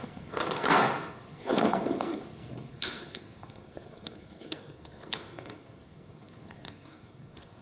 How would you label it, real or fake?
fake